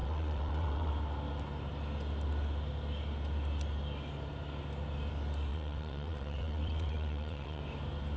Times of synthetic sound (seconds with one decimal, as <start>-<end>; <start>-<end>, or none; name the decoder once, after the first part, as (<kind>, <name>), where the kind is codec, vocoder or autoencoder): 0.0-0.9 (vocoder, WaveNeXt); 5.5-7.6